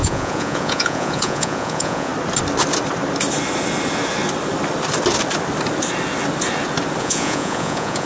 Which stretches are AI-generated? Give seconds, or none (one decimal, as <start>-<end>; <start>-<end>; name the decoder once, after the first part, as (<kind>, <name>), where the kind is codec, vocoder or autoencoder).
0.0-2.1 (vocoder, Vocos); 7.0-8.1

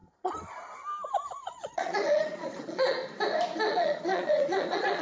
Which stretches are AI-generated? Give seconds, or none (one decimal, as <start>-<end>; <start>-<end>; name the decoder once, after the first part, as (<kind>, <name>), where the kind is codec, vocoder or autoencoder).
1.1-3.0 (vocoder, Vocos); 3.6-5.0